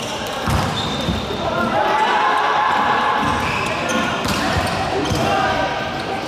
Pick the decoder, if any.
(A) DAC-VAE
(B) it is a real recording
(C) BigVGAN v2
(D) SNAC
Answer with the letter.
B